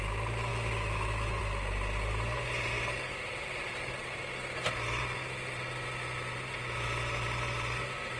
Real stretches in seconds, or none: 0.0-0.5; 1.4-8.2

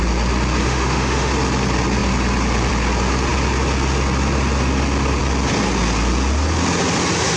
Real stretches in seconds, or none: 0.0-0.6; 1.3-7.4

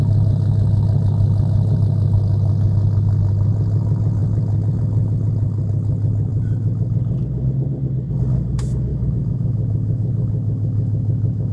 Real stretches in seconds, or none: 0.0-8.9

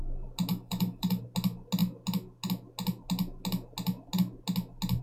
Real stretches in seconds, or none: 0.0-0.5; 1.2-5.0

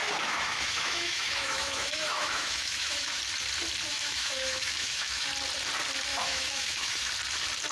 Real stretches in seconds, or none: 3.2-3.9; 5.3-6.1; 7.1-7.7

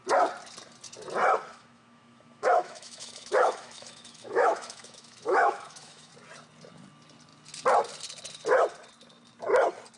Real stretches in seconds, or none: 0.0-1.5; 6.1-10.0